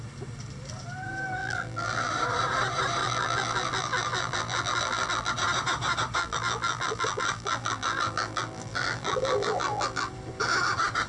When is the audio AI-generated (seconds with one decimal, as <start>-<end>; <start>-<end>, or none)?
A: 1.4-2.1; 3.0-5.3; 6.2-10.1